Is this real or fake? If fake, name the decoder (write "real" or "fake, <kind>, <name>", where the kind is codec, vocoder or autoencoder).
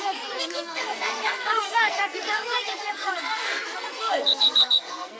fake, codec, SNAC